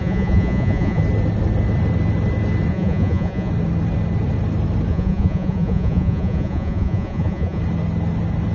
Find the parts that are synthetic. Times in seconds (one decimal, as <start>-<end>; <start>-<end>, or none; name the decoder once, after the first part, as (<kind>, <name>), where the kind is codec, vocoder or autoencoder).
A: 0.0-1.0 (vocoder, Vocos); 2.7-3.5; 4.9-7.6